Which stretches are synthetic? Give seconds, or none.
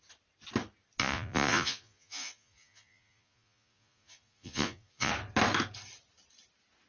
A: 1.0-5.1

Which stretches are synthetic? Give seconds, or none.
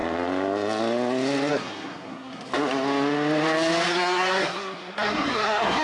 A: 1.5-2.5; 3.9-5.8